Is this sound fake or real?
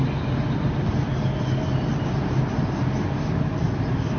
real